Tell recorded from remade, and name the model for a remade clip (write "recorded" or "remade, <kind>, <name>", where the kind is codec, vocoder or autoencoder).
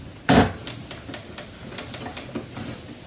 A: recorded